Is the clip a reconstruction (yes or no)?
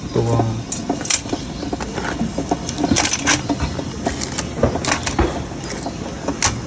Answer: no